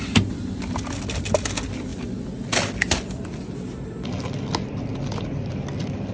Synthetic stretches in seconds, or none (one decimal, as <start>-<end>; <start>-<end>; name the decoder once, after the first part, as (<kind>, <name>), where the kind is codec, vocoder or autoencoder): none